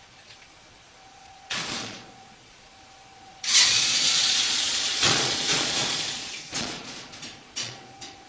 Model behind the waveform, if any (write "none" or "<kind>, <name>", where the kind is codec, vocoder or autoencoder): vocoder, Vocos